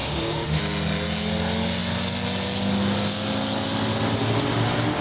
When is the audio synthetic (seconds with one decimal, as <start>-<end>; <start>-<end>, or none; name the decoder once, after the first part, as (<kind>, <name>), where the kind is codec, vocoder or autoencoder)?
0.0-0.6 (autoencoder, DAC-VAE)